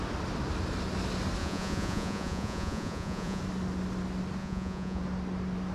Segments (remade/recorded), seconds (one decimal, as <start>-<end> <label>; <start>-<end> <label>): 0.0-1.4 recorded; 1.4-3.4 remade; 3.4-4.4 recorded; 4.4-5.0 remade; 5.0-5.7 recorded